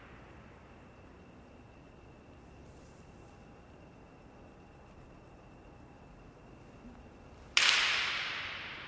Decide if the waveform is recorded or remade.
recorded